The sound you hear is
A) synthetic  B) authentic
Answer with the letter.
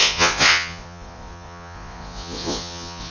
A